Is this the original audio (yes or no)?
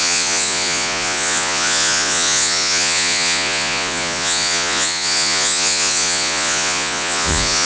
no